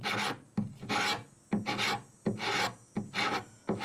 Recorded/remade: recorded